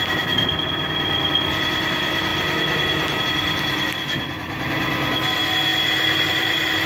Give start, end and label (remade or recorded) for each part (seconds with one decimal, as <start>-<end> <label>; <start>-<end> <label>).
0.0-2.3 remade; 2.3-3.2 recorded; 3.2-5.7 remade; 5.7-6.3 recorded; 6.3-6.9 remade